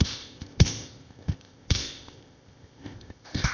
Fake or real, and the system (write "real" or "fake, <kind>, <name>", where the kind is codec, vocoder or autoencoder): fake, codec, ZipCodec